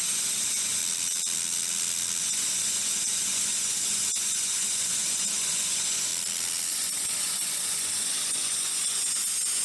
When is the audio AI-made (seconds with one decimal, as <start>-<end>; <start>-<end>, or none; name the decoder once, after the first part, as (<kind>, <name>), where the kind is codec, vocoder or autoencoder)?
0.0-0.8 (vocoder, Vocos); 2.2-6.1; 6.7-9.6